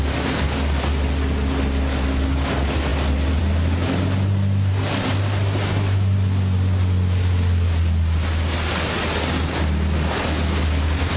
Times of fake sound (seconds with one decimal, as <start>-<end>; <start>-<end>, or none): none